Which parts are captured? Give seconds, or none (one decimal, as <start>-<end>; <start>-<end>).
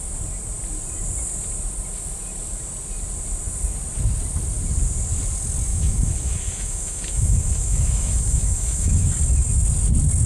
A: 0.0-5.7; 9.1-10.3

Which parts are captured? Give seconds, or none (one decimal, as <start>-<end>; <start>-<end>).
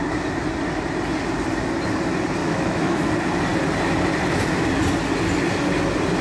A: 0.0-2.4; 3.0-6.2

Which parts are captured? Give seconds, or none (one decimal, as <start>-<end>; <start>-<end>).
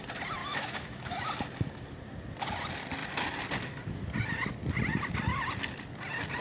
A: 0.0-0.4; 1.3-6.4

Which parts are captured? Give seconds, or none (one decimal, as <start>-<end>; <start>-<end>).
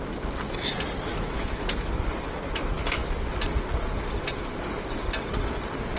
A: 0.0-1.1; 1.9-6.0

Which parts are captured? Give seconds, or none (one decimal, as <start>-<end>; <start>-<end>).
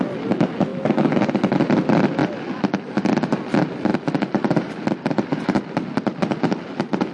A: 0.0-0.7; 1.3-7.1